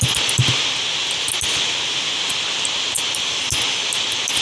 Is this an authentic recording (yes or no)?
yes